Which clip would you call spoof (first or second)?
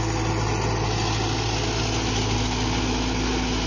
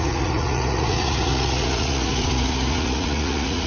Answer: second